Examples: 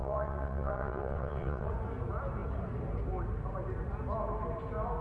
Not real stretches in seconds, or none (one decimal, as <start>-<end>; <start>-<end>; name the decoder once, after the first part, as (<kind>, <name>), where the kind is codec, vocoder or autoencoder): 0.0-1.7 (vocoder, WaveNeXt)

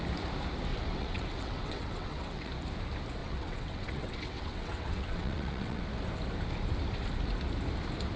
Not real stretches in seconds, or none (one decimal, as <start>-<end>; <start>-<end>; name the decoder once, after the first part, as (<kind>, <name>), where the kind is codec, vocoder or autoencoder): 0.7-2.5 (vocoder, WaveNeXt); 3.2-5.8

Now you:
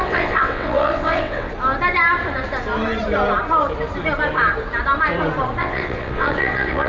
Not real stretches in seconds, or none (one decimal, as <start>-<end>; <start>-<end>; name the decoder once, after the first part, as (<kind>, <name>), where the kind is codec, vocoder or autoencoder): 0.0-1.5 (vocoder, WaveNeXt); 5.6-6.9

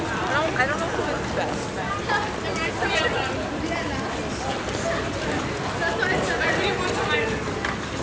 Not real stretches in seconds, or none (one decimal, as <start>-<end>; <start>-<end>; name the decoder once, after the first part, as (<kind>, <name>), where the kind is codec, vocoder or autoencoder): none